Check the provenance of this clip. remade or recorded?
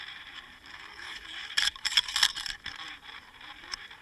remade